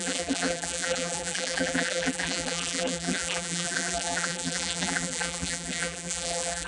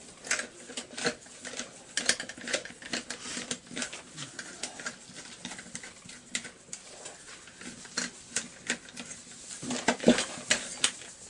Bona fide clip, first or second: second